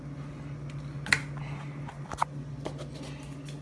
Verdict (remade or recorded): recorded